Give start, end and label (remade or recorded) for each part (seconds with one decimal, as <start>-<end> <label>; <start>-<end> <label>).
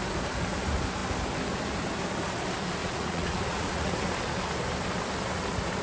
0.0-2.8 recorded; 2.8-3.9 remade; 3.9-5.8 recorded